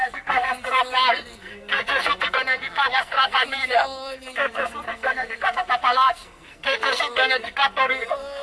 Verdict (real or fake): fake